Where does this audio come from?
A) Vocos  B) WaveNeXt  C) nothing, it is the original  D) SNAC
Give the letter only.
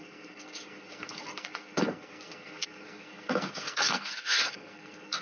D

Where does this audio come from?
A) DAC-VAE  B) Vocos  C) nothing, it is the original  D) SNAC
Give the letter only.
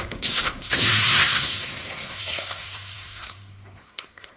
D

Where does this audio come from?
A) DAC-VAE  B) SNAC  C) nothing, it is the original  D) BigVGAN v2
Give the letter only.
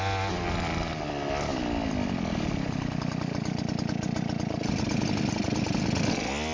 C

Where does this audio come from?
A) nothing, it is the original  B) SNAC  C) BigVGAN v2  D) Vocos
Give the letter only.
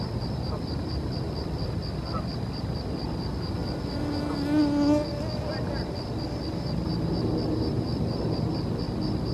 A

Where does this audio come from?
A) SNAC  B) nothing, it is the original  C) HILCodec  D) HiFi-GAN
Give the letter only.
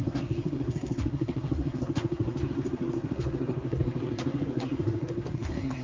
A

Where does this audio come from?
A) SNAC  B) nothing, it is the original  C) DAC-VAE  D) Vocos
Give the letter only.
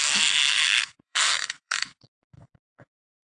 A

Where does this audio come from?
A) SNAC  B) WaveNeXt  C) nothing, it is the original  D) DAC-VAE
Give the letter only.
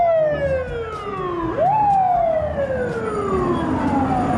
C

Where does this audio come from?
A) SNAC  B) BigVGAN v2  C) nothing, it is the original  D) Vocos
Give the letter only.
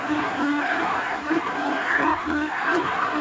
A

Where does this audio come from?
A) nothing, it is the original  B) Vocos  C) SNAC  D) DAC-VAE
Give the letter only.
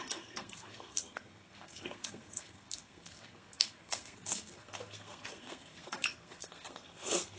C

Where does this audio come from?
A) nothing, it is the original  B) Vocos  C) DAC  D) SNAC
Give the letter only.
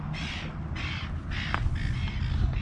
A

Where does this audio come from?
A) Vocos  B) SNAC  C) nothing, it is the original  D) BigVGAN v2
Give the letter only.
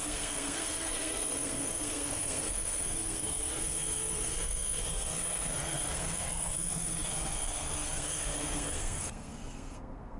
B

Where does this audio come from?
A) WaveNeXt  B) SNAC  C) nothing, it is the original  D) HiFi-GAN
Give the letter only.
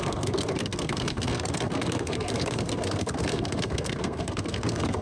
B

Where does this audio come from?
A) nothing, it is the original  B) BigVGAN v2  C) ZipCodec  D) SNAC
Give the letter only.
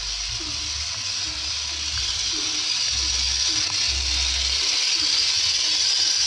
A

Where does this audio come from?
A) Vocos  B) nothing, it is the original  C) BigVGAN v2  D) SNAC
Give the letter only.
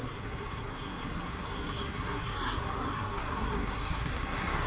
D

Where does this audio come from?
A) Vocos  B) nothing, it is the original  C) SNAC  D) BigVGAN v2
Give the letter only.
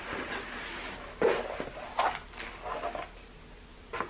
B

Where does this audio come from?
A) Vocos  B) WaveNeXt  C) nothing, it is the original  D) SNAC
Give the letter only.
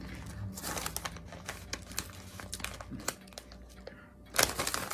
C